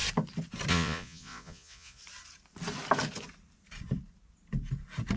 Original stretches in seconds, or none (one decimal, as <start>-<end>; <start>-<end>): 0.0-0.7; 2.0-5.2